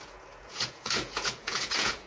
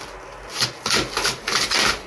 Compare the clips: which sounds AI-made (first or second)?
first